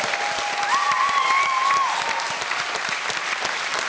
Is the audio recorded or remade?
recorded